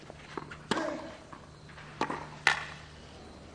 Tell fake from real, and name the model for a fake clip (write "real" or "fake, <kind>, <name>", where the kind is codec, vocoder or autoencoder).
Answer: real